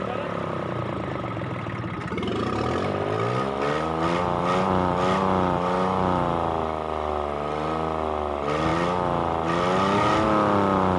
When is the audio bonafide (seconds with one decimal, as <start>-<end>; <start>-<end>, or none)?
0.0-11.0